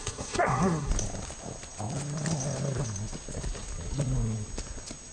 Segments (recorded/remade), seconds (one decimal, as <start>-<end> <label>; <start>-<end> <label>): 0.0-0.9 remade; 0.9-5.1 recorded